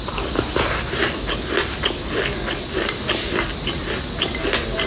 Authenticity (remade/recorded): recorded